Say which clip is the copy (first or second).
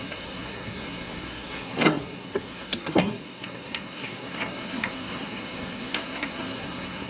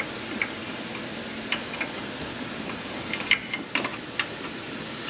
first